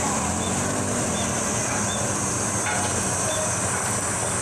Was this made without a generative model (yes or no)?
yes